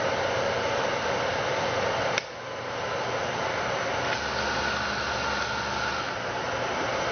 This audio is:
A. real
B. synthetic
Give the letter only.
A